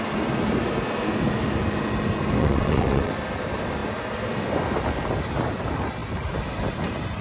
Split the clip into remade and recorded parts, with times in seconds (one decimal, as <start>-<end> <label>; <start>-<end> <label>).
0.0-2.4 recorded; 2.4-3.1 remade; 3.1-7.2 recorded